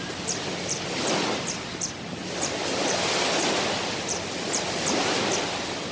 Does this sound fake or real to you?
real